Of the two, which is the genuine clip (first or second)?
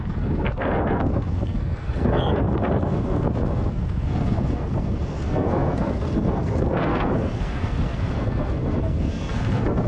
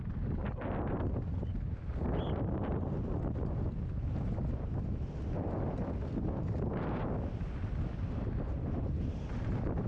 second